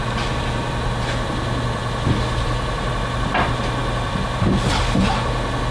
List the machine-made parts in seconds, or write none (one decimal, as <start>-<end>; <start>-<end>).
none